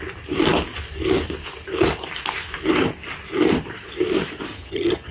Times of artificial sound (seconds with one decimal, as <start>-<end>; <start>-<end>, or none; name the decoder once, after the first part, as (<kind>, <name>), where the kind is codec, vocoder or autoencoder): 4.5-5.1 (vocoder, HiFi-GAN)